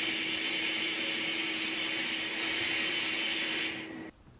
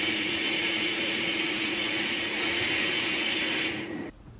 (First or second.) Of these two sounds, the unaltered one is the first